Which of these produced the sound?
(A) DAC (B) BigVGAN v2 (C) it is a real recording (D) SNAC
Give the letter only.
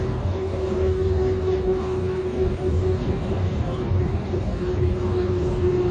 A